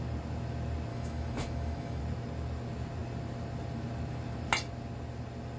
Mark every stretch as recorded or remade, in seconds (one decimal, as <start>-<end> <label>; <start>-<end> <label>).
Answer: 0.0-0.9 recorded; 0.9-2.0 remade; 2.0-5.6 recorded